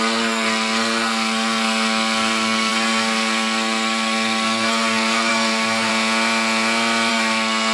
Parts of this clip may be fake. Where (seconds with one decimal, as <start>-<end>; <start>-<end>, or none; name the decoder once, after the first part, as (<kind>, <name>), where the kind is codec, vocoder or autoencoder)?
0.0-5.9 (codec, SNAC); 7.1-7.7